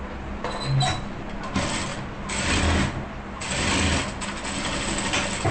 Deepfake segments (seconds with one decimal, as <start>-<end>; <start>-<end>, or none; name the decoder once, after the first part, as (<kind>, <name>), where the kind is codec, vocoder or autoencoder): none